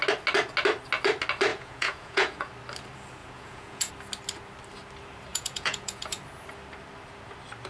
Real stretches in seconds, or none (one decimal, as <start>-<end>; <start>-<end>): 0.0-1.5; 2.5-3.2; 3.9-5.3; 6.2-7.7